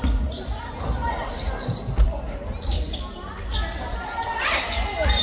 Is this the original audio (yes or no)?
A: yes